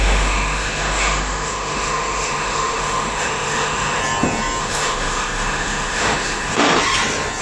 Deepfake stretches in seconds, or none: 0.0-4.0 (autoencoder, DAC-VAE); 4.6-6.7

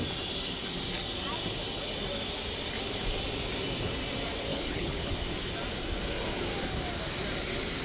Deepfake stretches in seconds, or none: 4.5-5.1 (codec, HILCodec)

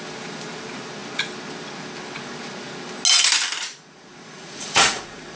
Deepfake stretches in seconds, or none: 3.7-5.4 (vocoder, Vocos)